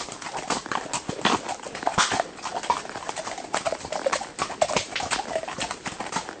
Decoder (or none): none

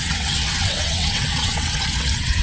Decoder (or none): vocoder, WaveNeXt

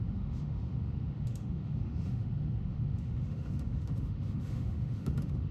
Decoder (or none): autoencoder, DAC-VAE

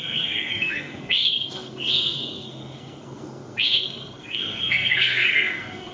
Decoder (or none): codec, SNAC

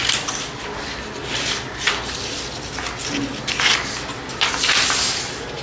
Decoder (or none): none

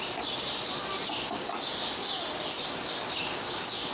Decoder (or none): vocoder, BigVGAN v2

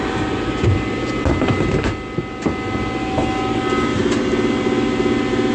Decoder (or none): none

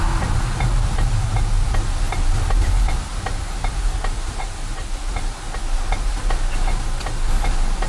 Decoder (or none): none